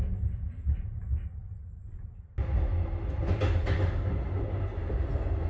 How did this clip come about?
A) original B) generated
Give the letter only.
A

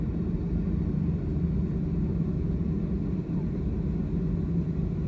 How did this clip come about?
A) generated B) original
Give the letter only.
B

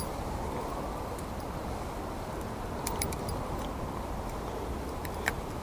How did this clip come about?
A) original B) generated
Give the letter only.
A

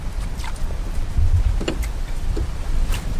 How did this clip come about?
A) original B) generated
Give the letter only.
B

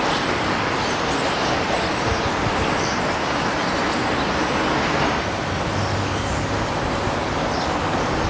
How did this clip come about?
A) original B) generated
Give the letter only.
A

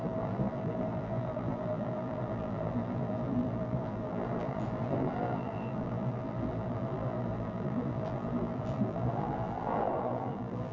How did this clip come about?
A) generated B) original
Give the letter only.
A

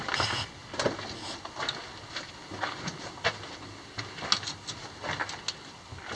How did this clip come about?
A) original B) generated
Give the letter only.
A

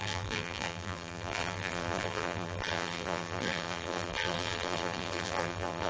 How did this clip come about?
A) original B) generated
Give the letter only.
B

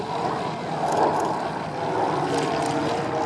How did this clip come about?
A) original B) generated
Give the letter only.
A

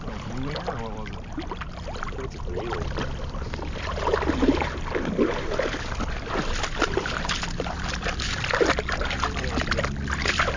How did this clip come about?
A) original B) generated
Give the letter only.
B